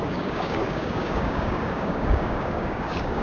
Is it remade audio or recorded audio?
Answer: remade